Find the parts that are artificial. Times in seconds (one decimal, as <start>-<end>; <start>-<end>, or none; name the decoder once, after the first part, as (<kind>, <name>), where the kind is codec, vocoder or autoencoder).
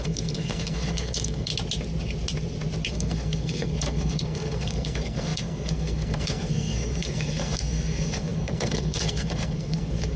0.0-1.5 (codec, SNAC); 2.9-10.2